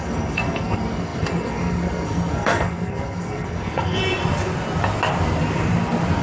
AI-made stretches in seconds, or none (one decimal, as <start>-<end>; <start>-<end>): 0.0-4.0